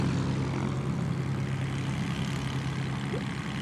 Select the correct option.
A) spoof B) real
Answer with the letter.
B